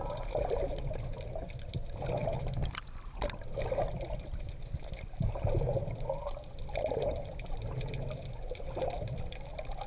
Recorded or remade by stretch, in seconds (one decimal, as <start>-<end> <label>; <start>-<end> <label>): 0.0-9.9 recorded

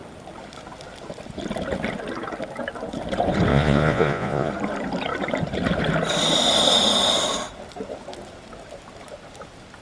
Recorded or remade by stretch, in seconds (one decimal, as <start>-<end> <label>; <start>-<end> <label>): 0.0-3.5 recorded; 3.5-4.5 remade; 4.5-9.8 recorded

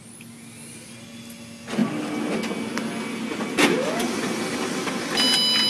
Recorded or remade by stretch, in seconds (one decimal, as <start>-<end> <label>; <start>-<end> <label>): 0.0-5.7 recorded

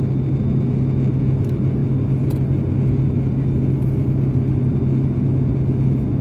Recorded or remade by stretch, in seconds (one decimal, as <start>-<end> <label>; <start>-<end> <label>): 0.0-6.2 recorded

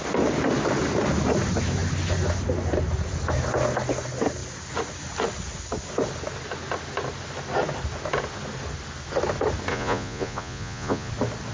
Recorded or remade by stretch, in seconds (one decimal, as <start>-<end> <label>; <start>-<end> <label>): 0.0-9.7 recorded; 9.7-11.1 remade; 11.1-11.5 recorded

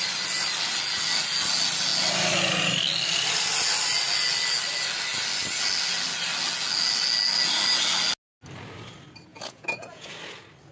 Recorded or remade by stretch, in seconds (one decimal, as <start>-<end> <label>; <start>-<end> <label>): 0.0-9.3 recorded; 9.3-10.1 remade; 10.1-10.7 recorded

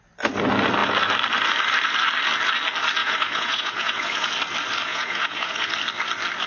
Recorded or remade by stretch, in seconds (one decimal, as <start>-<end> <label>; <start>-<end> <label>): 0.0-3.0 recorded; 3.0-4.3 remade; 4.3-4.9 recorded; 4.9-5.7 remade; 5.7-6.5 recorded

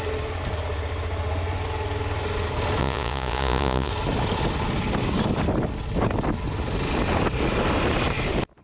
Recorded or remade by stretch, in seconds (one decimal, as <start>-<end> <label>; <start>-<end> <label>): 0.0-2.8 recorded; 2.8-3.9 remade; 3.9-8.6 recorded